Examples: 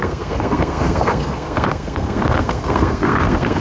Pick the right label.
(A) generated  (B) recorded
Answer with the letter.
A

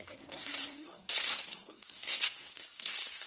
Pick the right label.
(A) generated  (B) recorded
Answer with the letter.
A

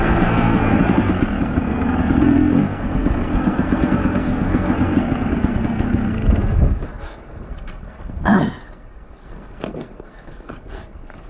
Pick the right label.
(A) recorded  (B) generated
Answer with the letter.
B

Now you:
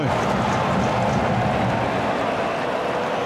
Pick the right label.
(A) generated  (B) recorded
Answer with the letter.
B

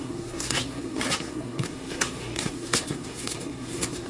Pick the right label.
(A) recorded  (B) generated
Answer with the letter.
B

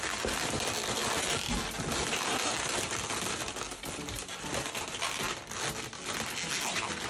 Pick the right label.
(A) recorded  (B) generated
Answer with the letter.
A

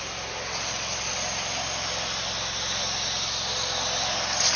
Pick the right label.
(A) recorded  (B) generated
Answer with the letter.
A